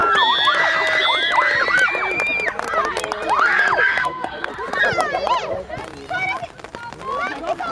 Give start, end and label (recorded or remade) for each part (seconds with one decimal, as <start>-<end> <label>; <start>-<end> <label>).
0.0-3.9 recorded; 3.9-4.5 remade; 4.5-7.7 recorded